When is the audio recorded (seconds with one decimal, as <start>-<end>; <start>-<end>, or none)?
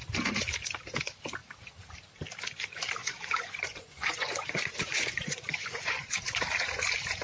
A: 0.0-3.0; 6.4-7.2